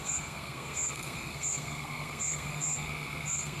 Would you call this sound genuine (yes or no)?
no